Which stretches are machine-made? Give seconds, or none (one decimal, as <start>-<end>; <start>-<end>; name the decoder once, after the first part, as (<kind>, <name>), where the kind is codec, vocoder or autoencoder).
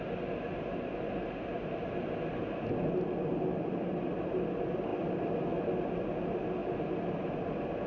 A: 3.5-4.5 (vocoder, BigVGAN v2)